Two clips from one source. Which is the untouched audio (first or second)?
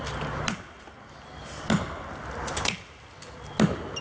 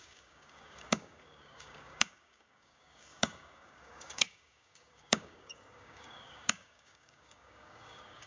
first